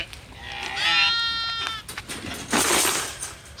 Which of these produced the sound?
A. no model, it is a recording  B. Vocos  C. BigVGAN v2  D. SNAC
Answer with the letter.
A